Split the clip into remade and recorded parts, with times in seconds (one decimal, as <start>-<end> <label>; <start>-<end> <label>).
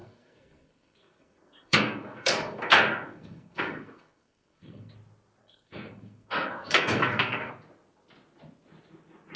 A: 0.0-4.9 remade; 4.9-5.4 recorded; 5.4-7.5 remade; 7.5-9.4 recorded